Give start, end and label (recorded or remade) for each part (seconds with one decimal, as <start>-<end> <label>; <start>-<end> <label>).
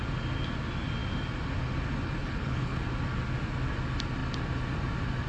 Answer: 0.0-2.2 recorded; 2.2-2.8 remade; 2.8-5.3 recorded